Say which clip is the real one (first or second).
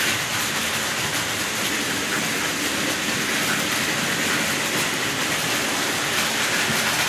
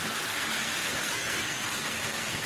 first